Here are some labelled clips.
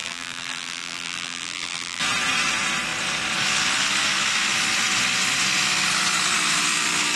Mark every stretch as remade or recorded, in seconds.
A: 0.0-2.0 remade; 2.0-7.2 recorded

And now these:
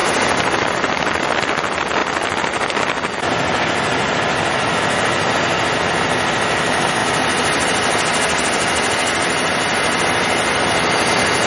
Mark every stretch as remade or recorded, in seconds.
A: 0.0-2.0 recorded; 2.0-2.8 remade; 2.8-7.0 recorded; 7.0-11.1 remade; 11.1-11.5 recorded

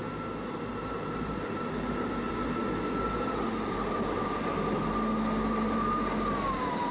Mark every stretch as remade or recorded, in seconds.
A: 0.0-0.6 recorded; 0.6-2.6 remade; 2.6-6.9 recorded

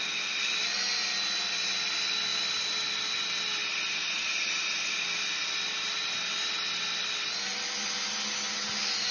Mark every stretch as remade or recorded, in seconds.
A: 0.0-3.6 recorded; 3.6-5.6 remade; 5.6-7.5 recorded; 7.5-8.1 remade; 8.1-9.1 recorded

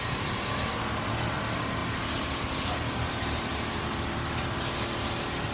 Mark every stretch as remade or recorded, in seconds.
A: 0.0-1.8 recorded; 1.8-5.1 remade; 5.1-5.5 recorded

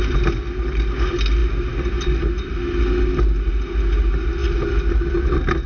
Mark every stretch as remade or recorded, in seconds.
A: 0.0-5.7 recorded

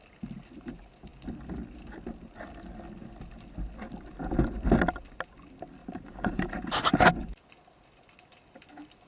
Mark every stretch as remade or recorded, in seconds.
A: 0.0-5.8 recorded; 5.8-6.5 remade; 6.5-9.1 recorded

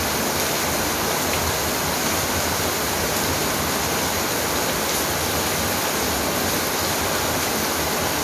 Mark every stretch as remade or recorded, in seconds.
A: 0.0-8.2 recorded